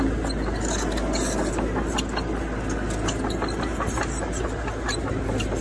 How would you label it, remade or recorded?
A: recorded